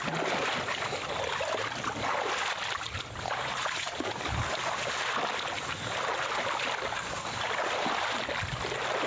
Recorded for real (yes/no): yes